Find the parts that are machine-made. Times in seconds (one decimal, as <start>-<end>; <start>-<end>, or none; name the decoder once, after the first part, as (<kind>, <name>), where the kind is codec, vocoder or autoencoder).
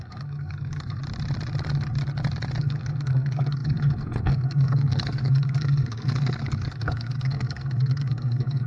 0.0-1.0 (codec, SNAC); 2.6-8.7